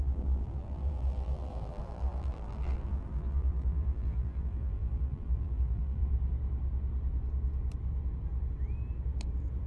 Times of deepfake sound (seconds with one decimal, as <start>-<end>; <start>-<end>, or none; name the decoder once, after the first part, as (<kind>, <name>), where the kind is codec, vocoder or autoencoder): 0.0-6.0 (vocoder, BigVGAN v2)